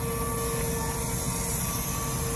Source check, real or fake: real